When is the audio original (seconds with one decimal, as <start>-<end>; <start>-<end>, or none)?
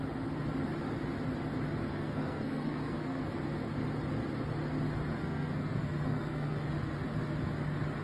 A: 0.0-1.9; 3.2-5.2; 6.7-8.0